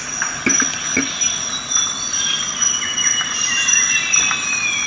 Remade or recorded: recorded